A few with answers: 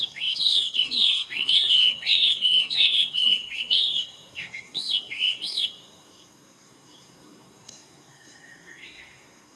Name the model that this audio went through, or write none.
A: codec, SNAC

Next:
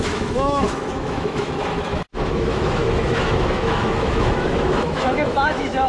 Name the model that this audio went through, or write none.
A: autoencoder, DAC-VAE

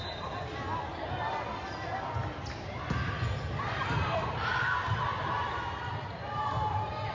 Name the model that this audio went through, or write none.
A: none